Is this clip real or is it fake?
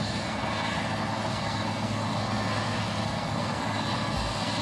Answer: fake